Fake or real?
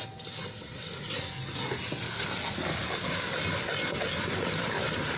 real